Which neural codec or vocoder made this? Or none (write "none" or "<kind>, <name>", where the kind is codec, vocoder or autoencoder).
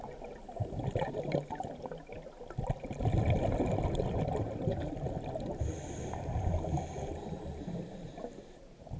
none